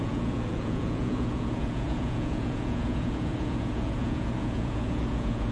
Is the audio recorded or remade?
remade